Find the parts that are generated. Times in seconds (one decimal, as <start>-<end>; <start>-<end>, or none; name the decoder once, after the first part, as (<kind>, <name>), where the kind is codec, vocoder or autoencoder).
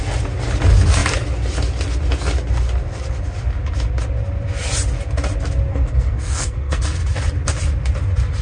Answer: 5.7-7.0 (codec, SNAC)